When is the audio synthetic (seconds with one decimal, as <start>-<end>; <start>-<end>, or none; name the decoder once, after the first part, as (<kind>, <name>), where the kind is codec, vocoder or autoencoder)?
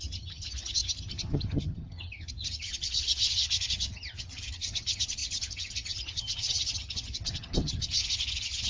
0.0-8.7 (vocoder, HiFi-GAN)